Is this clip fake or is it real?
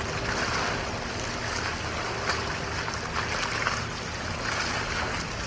real